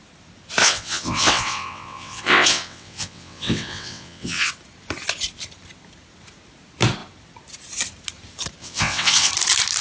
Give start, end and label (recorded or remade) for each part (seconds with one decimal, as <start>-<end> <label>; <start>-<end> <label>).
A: 0.0-0.6 recorded; 0.6-4.5 remade; 4.5-8.6 recorded; 8.6-9.3 remade; 9.3-9.8 recorded